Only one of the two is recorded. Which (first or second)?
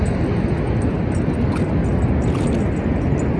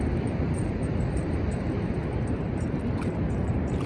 first